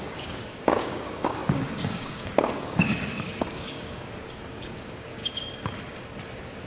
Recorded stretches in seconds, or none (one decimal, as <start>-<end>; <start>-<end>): 5.2-6.7